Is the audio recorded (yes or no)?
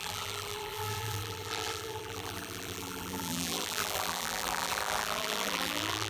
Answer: no